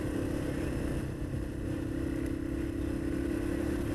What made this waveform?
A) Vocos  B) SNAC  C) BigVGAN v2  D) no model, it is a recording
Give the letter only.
D